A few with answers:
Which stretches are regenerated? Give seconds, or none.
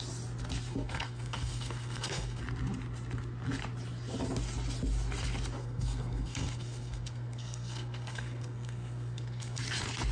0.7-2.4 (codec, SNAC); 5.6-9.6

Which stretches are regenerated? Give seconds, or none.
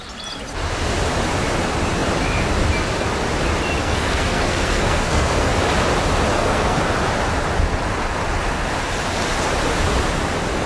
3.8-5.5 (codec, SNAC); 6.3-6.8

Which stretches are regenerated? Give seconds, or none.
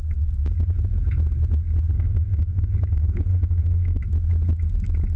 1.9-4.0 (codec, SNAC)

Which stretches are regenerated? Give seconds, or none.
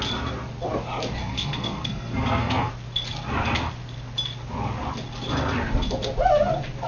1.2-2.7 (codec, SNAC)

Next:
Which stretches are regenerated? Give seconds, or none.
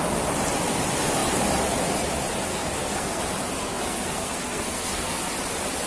2.5-3.2 (codec, SNAC); 3.6-5.3